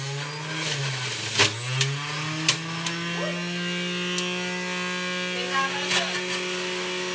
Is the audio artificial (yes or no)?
no